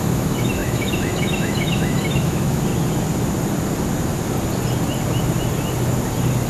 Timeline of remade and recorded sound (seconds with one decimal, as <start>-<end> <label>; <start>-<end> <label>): 0.0-2.7 remade; 2.7-6.5 recorded